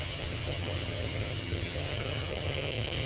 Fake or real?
fake